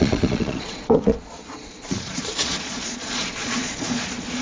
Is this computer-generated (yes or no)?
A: yes